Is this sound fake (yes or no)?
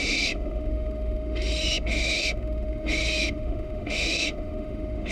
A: yes